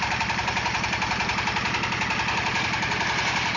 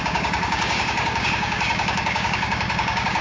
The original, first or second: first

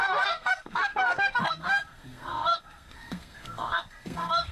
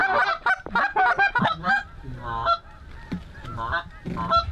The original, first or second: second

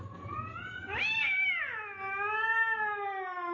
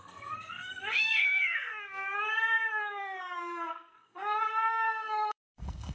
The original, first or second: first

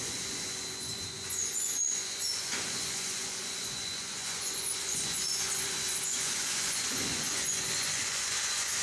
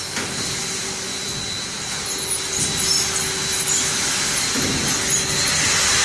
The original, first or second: second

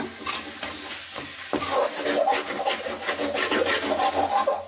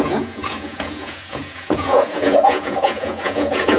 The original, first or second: first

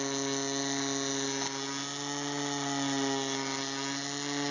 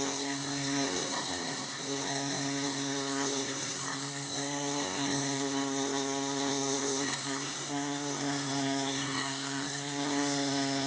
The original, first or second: first